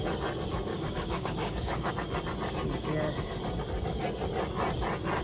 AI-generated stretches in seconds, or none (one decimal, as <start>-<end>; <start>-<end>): 0.7-1.9